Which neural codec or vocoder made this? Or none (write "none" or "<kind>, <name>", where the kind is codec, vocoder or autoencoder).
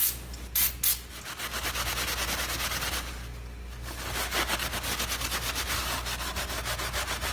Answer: none